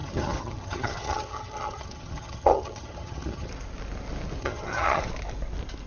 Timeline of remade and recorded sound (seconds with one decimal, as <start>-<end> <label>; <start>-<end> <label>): 0.0-3.5 remade; 3.5-4.4 recorded; 4.4-5.0 remade; 5.0-5.9 recorded